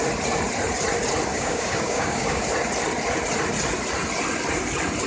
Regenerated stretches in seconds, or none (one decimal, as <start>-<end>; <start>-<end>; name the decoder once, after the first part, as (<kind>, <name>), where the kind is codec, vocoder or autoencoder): 1.3-2.4 (codec, DAC)